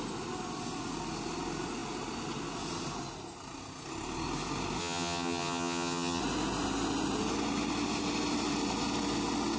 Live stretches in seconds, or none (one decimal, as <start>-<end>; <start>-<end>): 0.0-4.8; 6.2-9.6